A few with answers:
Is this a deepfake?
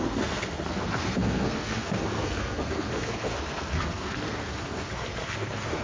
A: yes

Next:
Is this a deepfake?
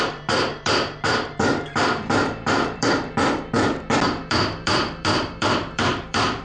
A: yes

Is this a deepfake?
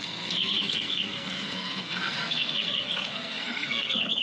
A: yes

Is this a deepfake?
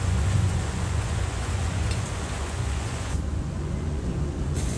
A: yes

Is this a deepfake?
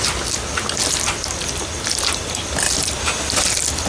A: no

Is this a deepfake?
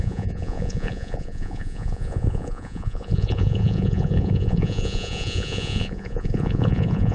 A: yes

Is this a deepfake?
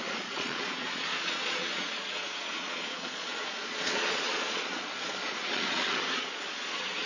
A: yes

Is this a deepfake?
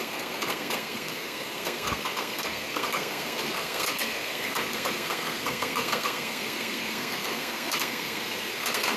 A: yes